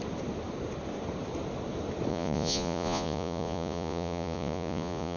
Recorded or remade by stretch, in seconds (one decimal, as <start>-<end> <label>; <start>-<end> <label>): 0.0-2.1 recorded; 2.1-5.2 remade